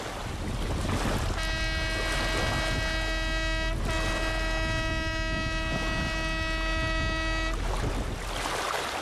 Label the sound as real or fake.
real